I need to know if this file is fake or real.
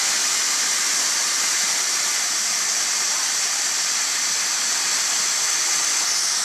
real